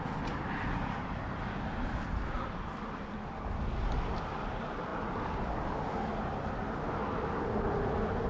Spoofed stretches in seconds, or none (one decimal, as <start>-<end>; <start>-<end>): none